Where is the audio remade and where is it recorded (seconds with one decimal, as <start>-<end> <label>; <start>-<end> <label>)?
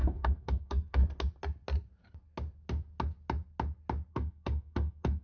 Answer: 0.0-1.0 remade; 1.0-4.1 recorded; 4.1-5.2 remade